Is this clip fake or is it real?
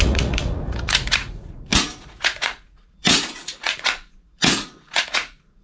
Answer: fake